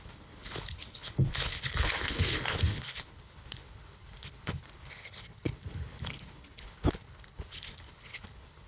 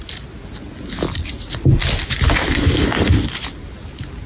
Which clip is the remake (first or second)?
first